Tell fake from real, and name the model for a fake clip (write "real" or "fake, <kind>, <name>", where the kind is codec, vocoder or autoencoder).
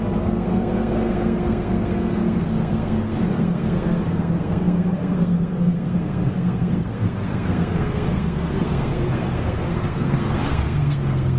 fake, codec, SNAC